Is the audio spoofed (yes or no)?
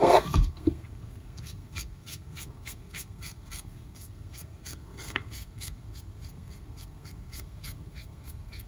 yes